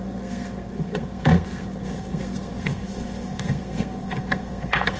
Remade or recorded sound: remade